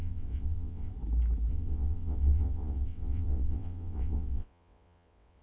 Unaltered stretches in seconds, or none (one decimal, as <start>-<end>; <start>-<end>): 0.9-1.5